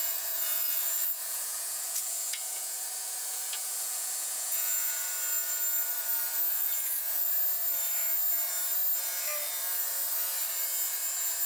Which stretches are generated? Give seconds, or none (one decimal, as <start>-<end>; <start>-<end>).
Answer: 0.0-4.9; 6.5-7.3